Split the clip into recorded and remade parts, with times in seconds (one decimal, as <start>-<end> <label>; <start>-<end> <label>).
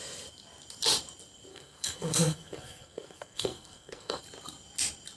0.0-1.5 recorded; 1.5-4.2 remade; 4.2-5.2 recorded